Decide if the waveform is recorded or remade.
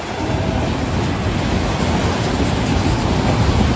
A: recorded